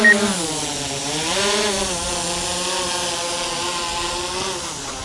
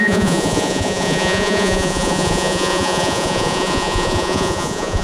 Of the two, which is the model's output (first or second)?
second